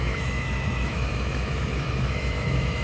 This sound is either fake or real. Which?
fake